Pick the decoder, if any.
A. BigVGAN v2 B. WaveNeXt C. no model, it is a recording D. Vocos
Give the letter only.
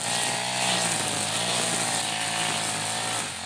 C